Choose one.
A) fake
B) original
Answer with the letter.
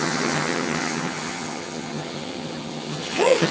A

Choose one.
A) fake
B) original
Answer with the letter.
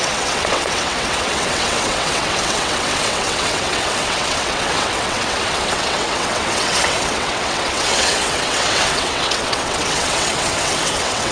A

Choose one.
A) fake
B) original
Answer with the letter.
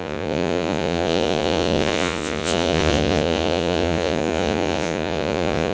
A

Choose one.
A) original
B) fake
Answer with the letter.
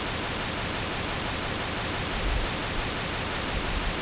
B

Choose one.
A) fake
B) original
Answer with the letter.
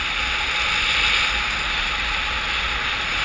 B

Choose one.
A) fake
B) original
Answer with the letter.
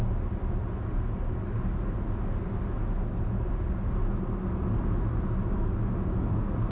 B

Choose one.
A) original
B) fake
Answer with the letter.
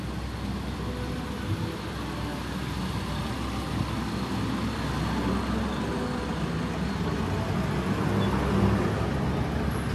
A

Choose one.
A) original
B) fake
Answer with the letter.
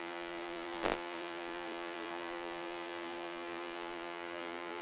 B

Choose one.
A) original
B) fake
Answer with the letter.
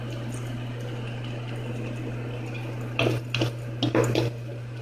A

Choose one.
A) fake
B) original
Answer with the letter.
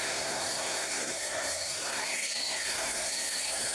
A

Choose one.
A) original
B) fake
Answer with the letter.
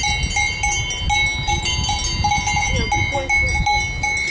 A